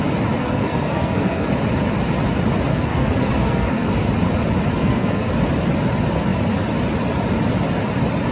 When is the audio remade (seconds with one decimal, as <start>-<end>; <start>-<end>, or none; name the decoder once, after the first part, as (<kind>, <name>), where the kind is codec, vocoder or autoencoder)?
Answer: 0.4-1.5 (codec, SNAC); 2.7-3.9; 4.8-5.3